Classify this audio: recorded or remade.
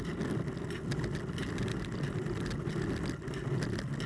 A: recorded